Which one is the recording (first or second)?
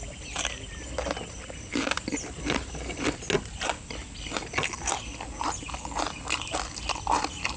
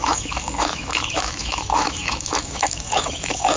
first